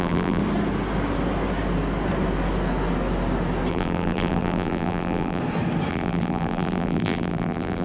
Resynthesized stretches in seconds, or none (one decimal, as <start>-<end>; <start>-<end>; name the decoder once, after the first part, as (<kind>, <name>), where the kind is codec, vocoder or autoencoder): 0.0-0.4 (vocoder, BigVGAN v2); 3.7-5.4; 5.9-7.8